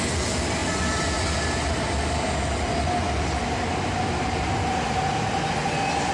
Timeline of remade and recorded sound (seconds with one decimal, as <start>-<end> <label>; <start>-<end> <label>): 0.0-6.1 recorded